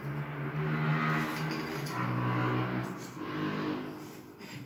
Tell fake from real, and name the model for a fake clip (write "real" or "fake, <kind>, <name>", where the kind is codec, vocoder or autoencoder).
real